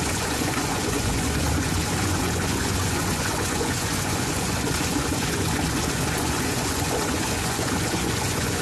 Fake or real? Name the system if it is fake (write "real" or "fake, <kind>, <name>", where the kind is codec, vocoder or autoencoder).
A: fake, vocoder, Vocos